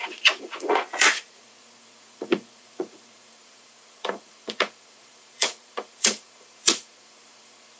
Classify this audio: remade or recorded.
remade